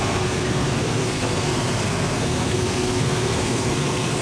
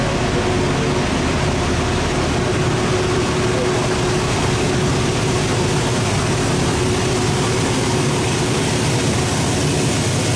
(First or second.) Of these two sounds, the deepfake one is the first